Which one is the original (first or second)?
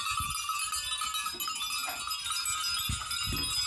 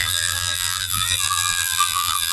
first